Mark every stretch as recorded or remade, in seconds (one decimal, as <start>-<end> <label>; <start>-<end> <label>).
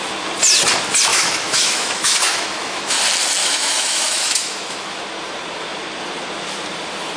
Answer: 0.0-1.1 recorded; 1.1-3.0 remade; 3.0-3.4 recorded; 3.4-5.0 remade; 5.0-7.2 recorded